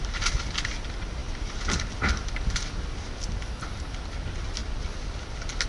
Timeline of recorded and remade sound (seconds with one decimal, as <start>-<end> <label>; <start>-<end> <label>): 0.0-5.7 recorded